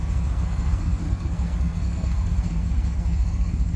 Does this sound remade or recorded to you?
remade